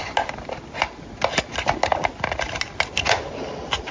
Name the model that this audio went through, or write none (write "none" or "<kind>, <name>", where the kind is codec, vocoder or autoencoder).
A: none